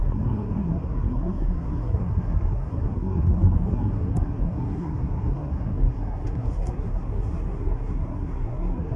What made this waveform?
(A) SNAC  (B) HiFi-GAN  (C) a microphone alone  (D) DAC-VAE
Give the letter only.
A